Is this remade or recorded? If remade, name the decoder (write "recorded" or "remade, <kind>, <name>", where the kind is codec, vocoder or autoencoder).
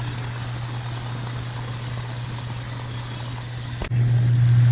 recorded